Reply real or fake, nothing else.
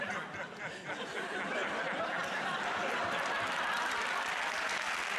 real